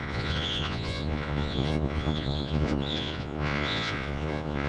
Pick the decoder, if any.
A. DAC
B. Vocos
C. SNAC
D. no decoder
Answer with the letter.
B